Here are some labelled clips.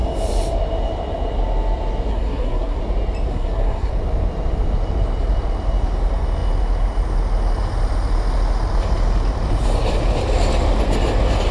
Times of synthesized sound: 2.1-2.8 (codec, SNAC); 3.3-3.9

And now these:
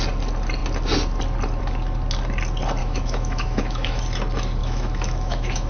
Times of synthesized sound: 2.8-4.0 (autoencoder, DAC-VAE); 4.6-5.7

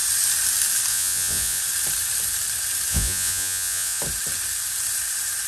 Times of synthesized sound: 0.9-1.6 (vocoder, Vocos); 2.9-4.0